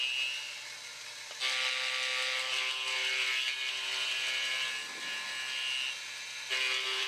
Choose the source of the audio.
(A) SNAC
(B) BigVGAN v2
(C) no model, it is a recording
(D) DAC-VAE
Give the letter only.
C